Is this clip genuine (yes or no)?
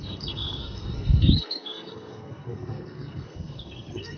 no